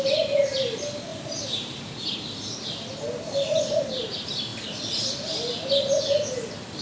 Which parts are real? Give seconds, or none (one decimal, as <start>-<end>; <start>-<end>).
0.0-1.1; 2.5-4.5; 5.3-6.8

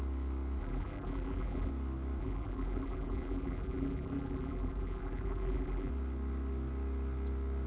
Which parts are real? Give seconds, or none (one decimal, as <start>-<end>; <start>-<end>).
0.0-0.6; 1.7-2.2; 5.9-7.7

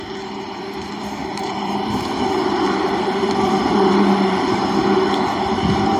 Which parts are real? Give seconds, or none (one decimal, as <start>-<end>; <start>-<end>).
0.0-1.2; 4.8-6.0